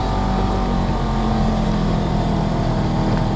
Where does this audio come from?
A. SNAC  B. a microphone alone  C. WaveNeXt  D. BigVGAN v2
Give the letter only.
B